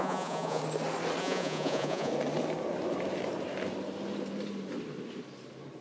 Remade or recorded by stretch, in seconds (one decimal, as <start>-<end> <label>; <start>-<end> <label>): 0.0-0.6 remade; 0.6-1.2 recorded; 1.2-2.1 remade; 2.1-5.8 recorded